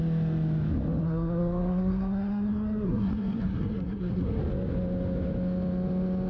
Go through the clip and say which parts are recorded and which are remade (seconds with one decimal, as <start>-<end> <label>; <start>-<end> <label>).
0.0-1.0 recorded; 1.0-4.4 remade; 4.4-6.3 recorded